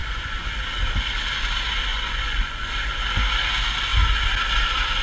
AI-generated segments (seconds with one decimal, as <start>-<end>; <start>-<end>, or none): 0.0-0.5; 1.9-3.0